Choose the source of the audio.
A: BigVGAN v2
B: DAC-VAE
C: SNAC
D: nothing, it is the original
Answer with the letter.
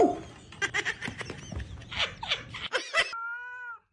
D